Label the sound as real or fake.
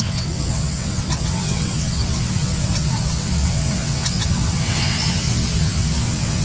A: fake